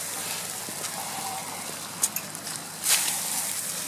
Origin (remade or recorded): recorded